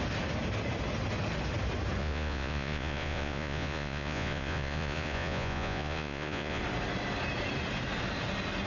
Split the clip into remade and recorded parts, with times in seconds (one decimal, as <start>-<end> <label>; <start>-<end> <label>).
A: 0.0-2.0 recorded; 2.0-6.6 remade; 6.6-8.7 recorded